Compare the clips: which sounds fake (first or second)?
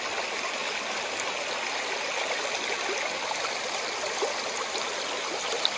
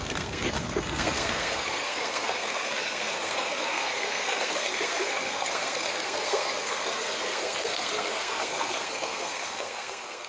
second